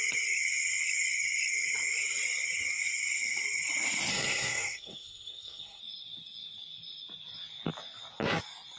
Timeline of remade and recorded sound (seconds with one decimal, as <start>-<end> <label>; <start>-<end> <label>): 0.0-4.1 recorded; 4.1-5.8 remade; 5.8-8.8 recorded